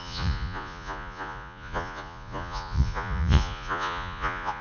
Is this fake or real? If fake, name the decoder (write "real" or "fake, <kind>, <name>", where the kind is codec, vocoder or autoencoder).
fake, vocoder, Vocos